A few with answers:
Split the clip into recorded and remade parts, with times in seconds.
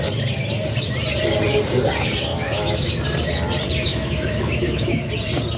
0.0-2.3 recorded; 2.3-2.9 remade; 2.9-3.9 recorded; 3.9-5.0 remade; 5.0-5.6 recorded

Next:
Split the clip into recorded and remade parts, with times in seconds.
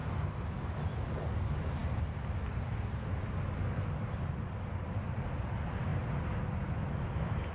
0.0-7.5 recorded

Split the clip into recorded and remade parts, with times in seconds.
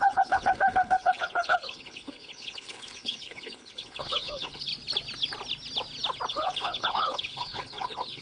0.0-4.7 remade; 4.7-6.3 recorded; 6.3-8.2 remade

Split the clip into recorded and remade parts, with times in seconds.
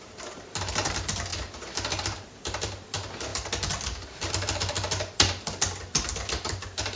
0.0-7.0 remade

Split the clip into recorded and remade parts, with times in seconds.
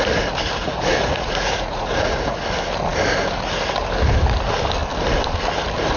0.0-0.6 recorded; 0.6-2.4 remade; 2.4-6.0 recorded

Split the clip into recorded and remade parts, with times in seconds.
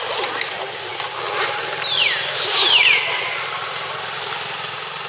0.0-5.1 recorded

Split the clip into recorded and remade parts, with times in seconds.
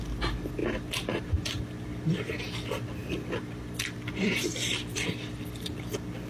0.0-6.3 remade